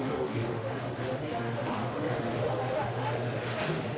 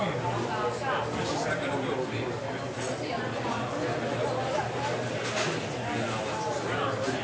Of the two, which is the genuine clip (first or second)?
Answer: second